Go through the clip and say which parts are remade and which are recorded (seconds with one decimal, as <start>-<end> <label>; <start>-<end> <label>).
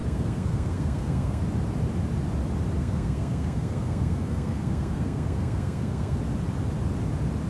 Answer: 0.0-1.4 remade; 1.4-2.8 recorded; 2.8-6.2 remade; 6.2-7.5 recorded